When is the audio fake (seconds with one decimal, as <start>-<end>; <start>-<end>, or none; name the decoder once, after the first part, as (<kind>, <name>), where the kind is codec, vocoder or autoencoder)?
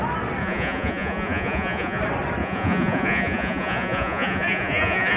0.4-2.0 (vocoder, Vocos); 2.4-5.2